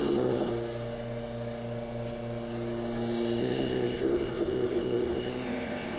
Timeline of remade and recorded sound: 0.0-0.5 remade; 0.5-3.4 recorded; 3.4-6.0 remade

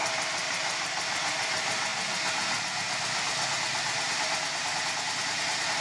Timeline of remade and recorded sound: 0.0-5.8 recorded

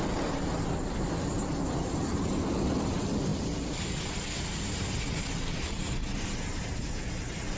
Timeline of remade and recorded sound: 0.0-7.6 recorded

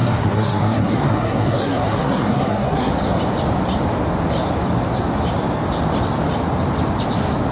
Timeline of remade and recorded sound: 0.0-2.9 remade; 2.9-7.5 recorded

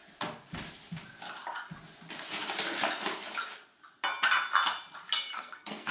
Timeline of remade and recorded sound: 0.0-5.3 recorded; 5.3-5.9 remade

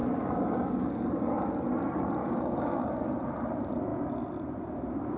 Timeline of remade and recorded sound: 0.0-1.5 remade; 1.5-2.2 recorded; 2.2-2.9 remade; 2.9-5.2 recorded